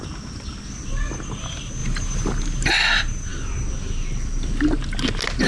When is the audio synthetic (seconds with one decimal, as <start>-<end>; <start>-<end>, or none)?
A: none